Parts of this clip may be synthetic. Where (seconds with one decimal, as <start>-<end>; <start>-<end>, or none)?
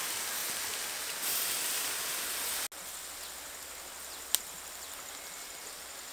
none